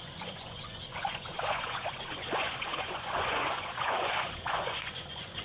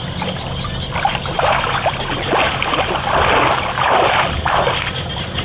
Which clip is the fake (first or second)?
first